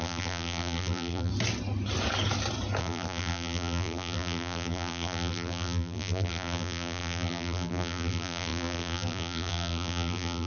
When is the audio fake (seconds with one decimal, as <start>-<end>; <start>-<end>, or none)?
0.0-1.3; 2.8-10.5